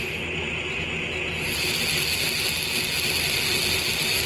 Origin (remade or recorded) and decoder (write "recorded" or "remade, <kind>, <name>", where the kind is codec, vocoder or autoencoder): recorded